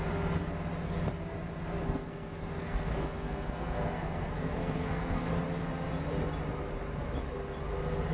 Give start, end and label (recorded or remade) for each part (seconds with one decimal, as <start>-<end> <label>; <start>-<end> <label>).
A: 0.0-1.8 recorded; 1.8-5.3 remade; 5.3-8.1 recorded